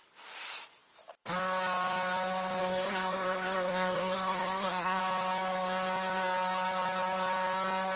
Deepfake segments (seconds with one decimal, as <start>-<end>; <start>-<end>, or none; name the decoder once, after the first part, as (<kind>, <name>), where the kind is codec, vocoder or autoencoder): 2.6-5.0 (codec, SNAC)